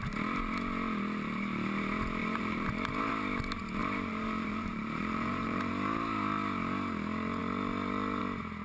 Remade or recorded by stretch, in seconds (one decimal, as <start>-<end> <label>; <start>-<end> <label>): 0.0-2.2 recorded; 2.2-3.1 remade; 3.1-3.8 recorded; 3.8-5.7 remade; 5.7-8.6 recorded